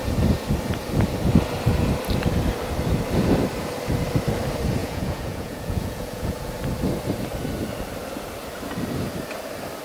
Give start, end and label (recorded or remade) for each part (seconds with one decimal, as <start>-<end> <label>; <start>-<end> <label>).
0.0-4.8 recorded; 4.8-6.5 remade; 6.5-9.8 recorded